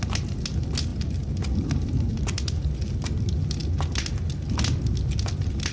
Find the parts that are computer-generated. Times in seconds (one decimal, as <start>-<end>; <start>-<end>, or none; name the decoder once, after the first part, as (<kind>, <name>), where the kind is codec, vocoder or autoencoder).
0.9-1.7 (vocoder, BigVGAN v2); 2.1-2.9